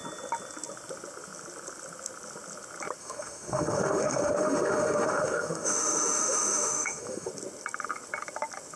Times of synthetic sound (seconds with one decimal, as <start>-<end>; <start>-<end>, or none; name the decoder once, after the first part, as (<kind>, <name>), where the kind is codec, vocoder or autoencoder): 3.0-7.3 (autoencoder, DAC-VAE)